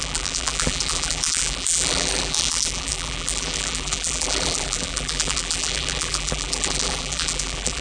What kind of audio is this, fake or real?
fake